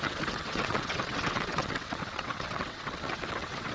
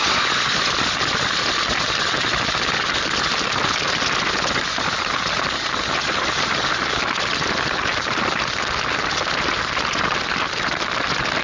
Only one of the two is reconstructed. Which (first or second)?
first